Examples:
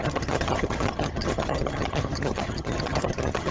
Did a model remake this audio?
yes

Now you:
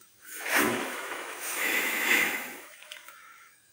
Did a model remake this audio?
yes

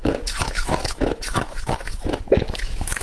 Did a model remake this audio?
yes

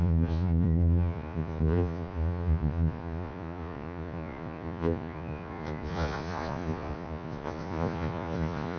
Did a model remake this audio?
yes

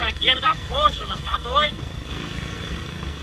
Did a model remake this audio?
yes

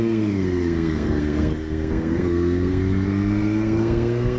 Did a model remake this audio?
yes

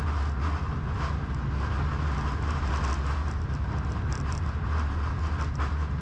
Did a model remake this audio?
no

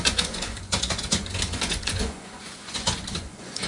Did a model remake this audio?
yes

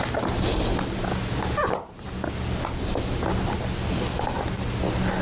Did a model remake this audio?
no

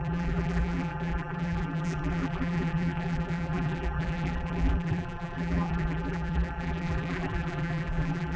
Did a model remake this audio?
yes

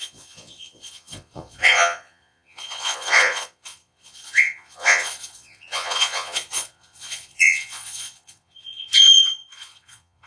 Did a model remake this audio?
yes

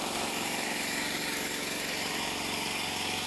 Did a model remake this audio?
yes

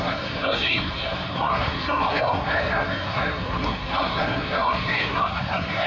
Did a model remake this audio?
yes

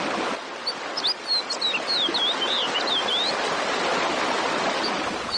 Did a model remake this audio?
no